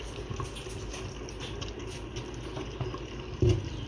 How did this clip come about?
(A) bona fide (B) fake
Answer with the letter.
A